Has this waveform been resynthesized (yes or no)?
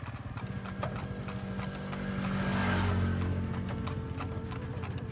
no